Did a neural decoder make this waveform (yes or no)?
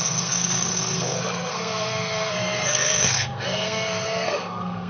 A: yes